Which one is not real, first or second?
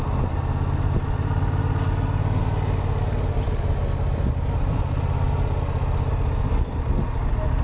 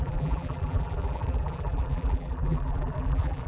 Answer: second